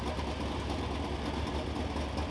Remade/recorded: recorded